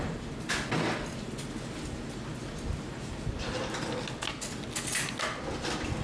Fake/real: real